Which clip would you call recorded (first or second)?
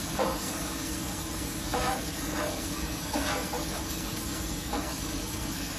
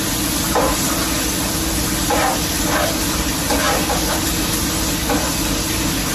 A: second